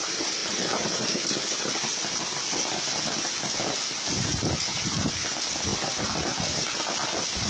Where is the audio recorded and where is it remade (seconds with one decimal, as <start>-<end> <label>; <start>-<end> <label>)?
0.0-5.7 remade; 5.7-6.8 recorded; 6.8-7.5 remade